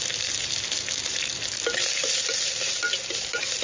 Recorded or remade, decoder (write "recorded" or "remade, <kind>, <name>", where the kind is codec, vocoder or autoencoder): recorded